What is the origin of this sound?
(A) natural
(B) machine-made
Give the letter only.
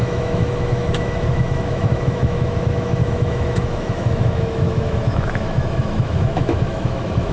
B